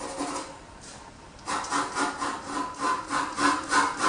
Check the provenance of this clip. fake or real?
real